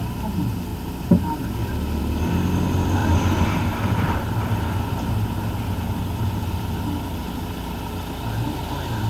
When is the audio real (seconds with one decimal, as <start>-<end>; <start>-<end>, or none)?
0.0-3.0; 4.8-9.1